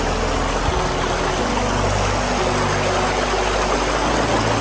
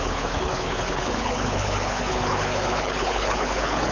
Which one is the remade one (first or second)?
second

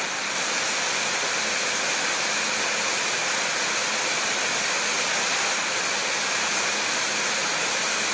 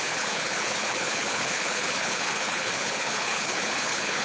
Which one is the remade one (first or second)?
second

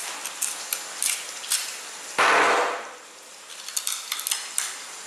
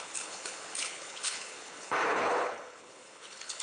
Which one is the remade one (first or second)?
second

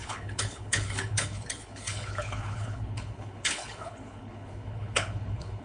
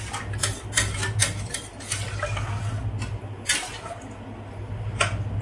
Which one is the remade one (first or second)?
first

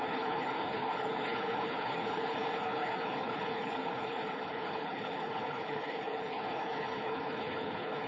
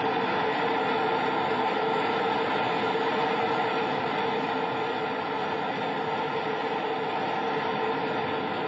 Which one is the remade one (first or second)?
first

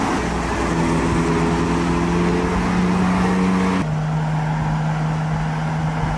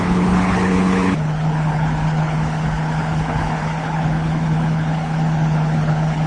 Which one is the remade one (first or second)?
second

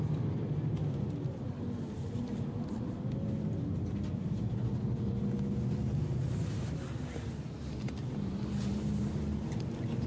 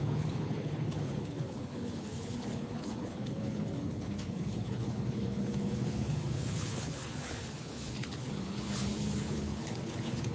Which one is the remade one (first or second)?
second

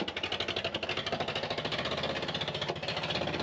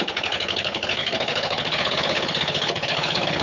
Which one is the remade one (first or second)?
second